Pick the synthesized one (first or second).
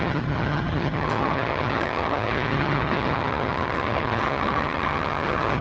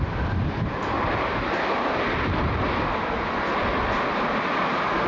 first